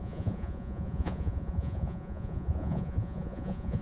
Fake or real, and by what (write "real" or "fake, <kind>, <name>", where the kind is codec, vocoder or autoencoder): fake, vocoder, Vocos